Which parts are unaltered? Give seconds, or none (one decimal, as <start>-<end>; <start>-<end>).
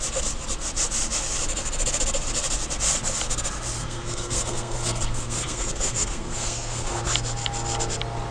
0.0-3.8; 7.0-8.3